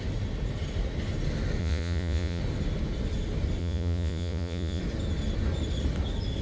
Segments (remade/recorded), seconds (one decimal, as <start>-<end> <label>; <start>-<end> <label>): 0.0-1.6 recorded; 1.6-2.4 remade; 2.4-3.6 recorded; 3.6-4.8 remade; 4.8-6.4 recorded